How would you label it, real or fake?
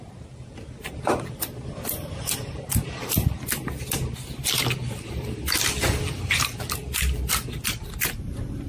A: real